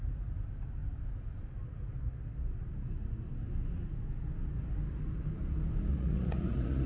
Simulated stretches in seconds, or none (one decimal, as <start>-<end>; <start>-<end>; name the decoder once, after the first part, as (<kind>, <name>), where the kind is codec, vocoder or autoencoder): 5.9-6.9 (vocoder, Vocos)